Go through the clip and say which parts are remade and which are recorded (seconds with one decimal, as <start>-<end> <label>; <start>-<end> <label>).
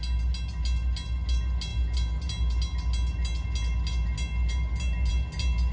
0.0-5.7 recorded